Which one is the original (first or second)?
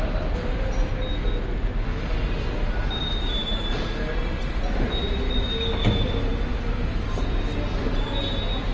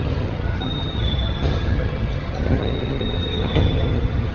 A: first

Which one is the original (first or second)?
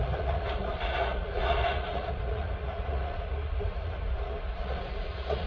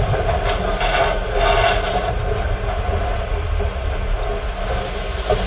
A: second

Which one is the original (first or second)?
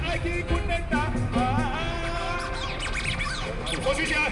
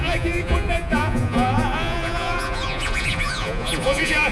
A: first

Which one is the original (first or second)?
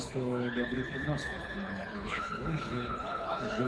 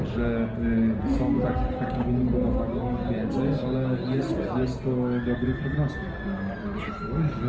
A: second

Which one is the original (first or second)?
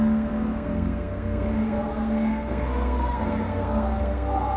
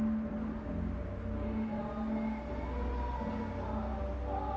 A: second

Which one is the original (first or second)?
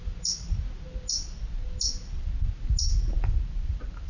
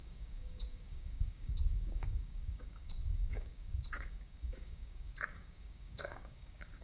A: first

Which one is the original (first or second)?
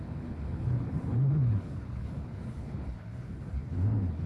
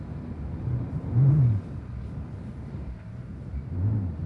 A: second